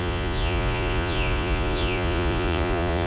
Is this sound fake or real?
fake